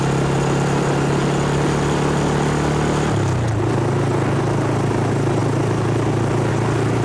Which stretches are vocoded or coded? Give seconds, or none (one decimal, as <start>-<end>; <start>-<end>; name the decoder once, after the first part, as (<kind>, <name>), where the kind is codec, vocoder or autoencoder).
none